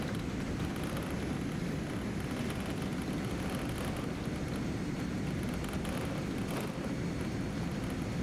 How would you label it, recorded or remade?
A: recorded